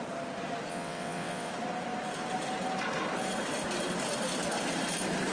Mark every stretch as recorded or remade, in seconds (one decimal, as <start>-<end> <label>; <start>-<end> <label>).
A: 0.0-0.7 recorded; 0.7-1.5 remade; 1.5-5.3 recorded